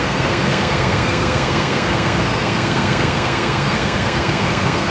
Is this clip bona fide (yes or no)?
no